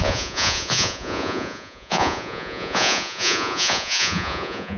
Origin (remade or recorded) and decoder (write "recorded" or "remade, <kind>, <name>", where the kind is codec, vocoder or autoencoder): remade, vocoder, Vocos